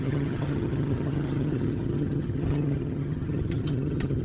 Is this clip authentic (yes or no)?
no